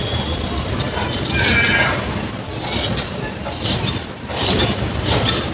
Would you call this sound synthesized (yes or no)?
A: no